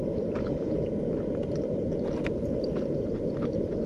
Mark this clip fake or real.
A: real